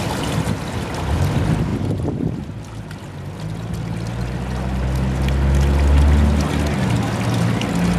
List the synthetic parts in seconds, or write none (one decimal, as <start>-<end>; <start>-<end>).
1.7-2.8